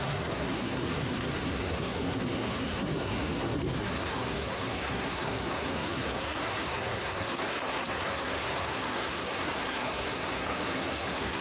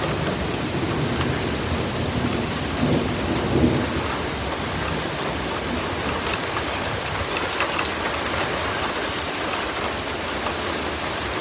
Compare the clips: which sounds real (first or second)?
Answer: second